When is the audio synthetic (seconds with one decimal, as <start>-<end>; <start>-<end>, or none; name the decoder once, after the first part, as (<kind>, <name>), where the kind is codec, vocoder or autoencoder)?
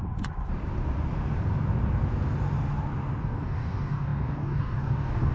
3.2-5.3 (codec, DAC)